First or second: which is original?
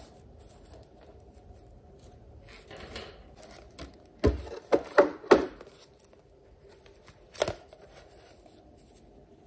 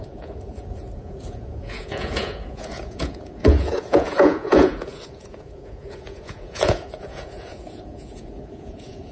first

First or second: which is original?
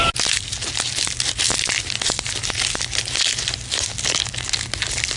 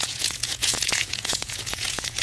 first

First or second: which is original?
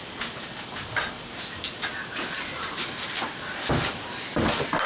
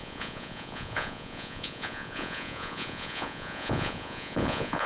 first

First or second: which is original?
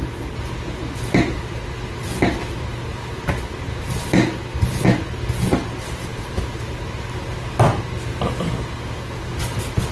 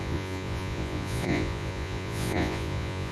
first